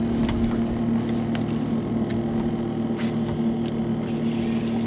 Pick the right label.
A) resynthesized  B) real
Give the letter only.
B